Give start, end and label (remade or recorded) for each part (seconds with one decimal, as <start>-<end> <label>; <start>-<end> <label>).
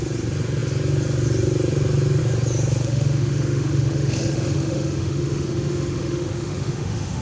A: 0.0-2.8 recorded; 2.8-7.2 remade